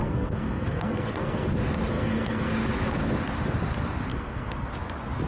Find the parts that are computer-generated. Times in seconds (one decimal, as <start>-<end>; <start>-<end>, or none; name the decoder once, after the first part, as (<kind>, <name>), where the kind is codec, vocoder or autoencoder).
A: 0.0-1.5 (codec, SNAC); 1.9-2.5; 4.1-4.7